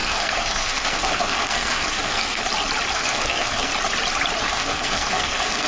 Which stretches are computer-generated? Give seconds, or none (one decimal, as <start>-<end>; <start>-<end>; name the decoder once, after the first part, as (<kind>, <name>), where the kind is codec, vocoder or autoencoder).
0.0-2.4 (codec, SNAC); 2.9-3.7; 4.4-5.7